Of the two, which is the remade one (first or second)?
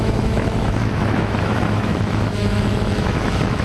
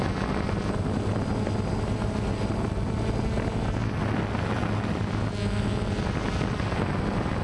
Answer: first